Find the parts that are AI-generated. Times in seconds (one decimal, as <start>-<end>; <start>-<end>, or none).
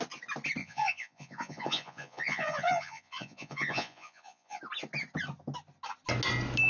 0.6-4.6